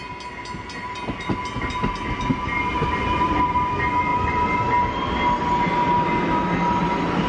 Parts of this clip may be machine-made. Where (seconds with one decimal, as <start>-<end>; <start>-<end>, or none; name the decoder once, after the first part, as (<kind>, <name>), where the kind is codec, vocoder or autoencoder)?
none